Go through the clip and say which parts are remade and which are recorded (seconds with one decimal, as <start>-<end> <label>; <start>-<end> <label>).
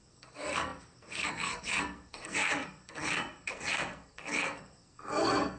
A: 0.0-5.6 remade